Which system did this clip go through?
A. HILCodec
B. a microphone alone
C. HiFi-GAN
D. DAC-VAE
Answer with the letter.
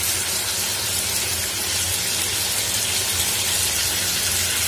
B